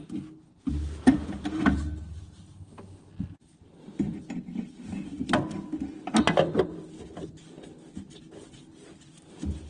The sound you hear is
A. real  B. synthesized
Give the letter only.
A